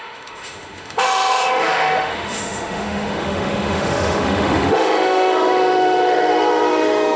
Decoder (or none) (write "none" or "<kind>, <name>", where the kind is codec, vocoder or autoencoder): autoencoder, DAC-VAE